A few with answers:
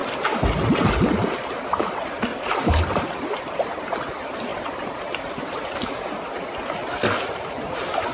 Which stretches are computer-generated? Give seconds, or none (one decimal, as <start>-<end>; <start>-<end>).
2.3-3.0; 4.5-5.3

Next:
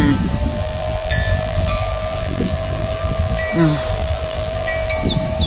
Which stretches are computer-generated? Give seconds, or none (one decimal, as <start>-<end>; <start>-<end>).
0.5-3.5; 3.9-4.9

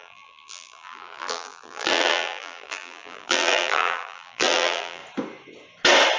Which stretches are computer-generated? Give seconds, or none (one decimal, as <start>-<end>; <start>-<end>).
0.0-5.0

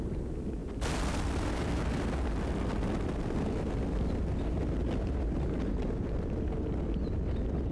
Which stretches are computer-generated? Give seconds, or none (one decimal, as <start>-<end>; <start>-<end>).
none